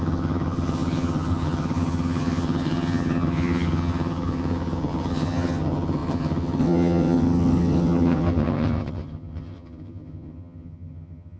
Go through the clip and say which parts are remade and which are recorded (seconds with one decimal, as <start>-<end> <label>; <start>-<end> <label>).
0.0-11.4 remade